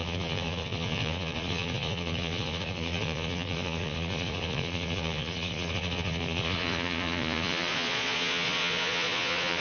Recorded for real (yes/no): no